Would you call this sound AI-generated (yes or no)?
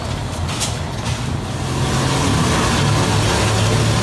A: no